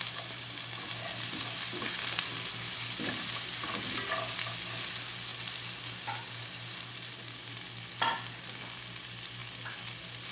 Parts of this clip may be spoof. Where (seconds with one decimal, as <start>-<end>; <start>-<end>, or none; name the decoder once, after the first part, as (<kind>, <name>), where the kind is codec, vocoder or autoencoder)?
none